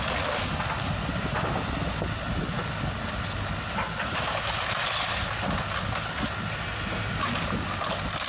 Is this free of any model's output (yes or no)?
yes